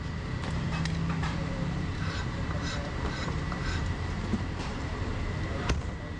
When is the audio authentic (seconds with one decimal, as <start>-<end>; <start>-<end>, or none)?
0.0-1.2; 4.9-5.5